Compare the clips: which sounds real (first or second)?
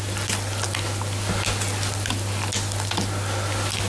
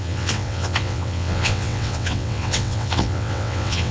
first